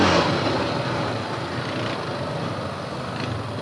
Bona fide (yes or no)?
yes